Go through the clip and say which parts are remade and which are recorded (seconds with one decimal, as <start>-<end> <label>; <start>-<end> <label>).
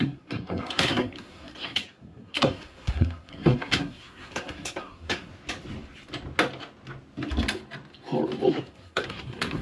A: 0.0-5.3 remade; 5.3-8.5 recorded; 8.5-9.6 remade